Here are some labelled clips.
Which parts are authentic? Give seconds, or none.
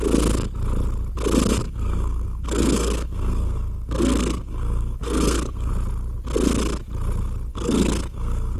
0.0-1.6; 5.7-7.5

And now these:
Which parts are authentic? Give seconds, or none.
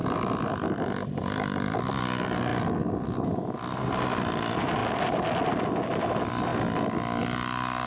0.0-7.9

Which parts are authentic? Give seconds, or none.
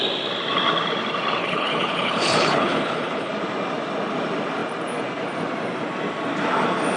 0.0-1.4; 3.3-7.0